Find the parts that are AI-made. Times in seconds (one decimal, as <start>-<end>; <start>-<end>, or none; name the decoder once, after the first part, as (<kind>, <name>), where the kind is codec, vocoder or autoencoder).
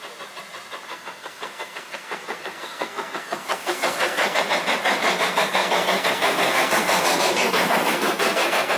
0.9-4.4 (codec, SNAC); 5.0-8.8